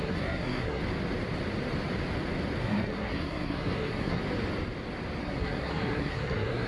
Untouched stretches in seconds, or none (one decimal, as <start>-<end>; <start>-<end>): 0.8-2.6; 4.2-5.2